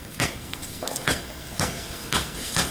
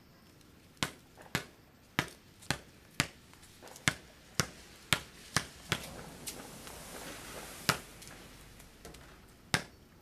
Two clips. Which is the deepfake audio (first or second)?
first